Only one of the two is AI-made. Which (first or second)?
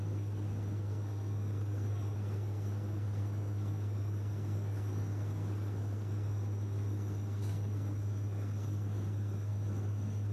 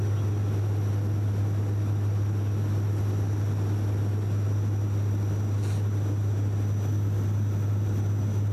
first